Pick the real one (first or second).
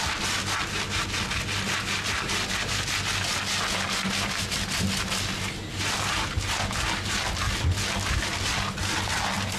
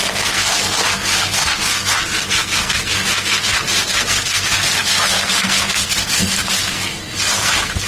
first